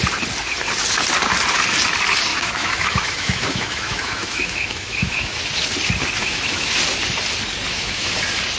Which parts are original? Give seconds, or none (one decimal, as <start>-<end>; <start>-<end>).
0.0-2.3; 5.4-6.2; 6.7-7.7; 8.2-8.6